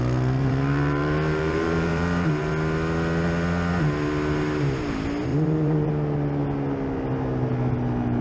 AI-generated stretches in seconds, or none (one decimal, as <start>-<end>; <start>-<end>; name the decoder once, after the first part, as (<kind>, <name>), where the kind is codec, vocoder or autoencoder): 0.4-2.5 (vocoder, BigVGAN v2); 5.3-5.9